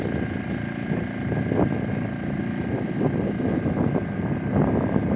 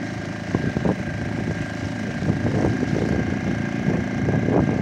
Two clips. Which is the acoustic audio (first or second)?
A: first